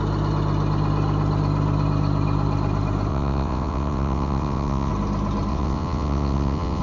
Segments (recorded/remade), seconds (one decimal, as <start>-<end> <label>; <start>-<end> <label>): 0.0-3.1 recorded; 3.1-4.9 remade; 4.9-5.5 recorded; 5.5-6.8 remade

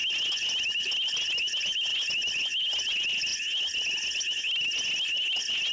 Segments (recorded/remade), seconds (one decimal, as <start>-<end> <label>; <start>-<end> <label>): 0.0-5.7 recorded

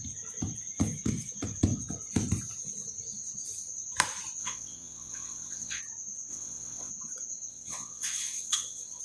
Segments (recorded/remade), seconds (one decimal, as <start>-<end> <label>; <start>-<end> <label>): 0.0-4.4 recorded; 4.4-5.8 remade; 5.8-6.3 recorded; 6.3-6.9 remade; 6.9-7.5 recorded; 7.5-9.0 remade

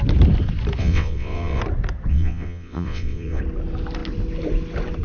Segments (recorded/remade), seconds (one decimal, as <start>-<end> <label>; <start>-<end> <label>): 0.0-0.8 recorded; 0.8-1.6 remade; 1.6-2.1 recorded; 2.1-3.4 remade; 3.4-5.0 recorded

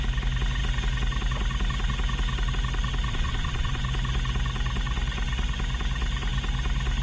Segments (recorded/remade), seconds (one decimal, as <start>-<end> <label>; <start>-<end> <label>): 0.0-3.1 recorded; 3.1-3.8 remade; 3.8-7.0 recorded

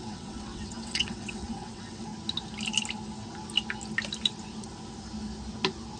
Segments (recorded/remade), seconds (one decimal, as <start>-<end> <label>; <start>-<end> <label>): 0.0-2.1 remade; 2.1-6.0 recorded

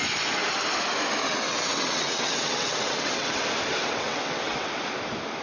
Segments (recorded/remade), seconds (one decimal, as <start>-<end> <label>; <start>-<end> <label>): 0.0-1.2 recorded; 1.2-3.4 remade; 3.4-3.8 recorded; 3.8-4.7 remade; 4.7-5.4 recorded